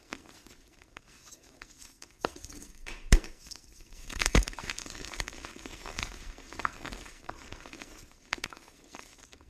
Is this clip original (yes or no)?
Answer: no